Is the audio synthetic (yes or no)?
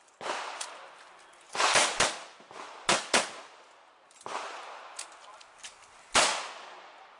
no